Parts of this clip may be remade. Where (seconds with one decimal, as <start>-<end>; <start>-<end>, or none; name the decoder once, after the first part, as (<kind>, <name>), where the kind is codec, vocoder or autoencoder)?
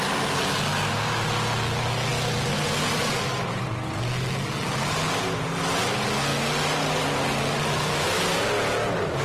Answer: none